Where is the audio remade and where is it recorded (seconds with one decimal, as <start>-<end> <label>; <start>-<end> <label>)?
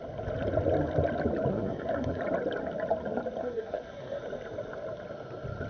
0.0-1.5 recorded; 1.5-2.2 remade; 2.2-3.4 recorded; 3.4-4.2 remade; 4.2-5.7 recorded